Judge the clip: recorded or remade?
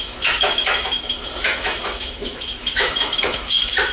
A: remade